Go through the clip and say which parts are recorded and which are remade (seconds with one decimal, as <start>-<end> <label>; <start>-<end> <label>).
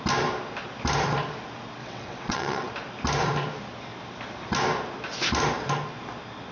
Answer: 0.0-1.8 recorded; 1.8-2.7 remade; 2.7-6.5 recorded